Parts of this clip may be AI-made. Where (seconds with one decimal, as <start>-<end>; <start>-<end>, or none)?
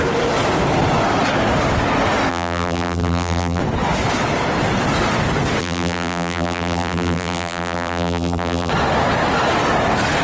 2.3-3.6; 5.6-8.7